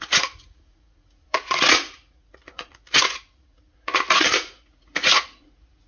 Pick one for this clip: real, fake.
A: fake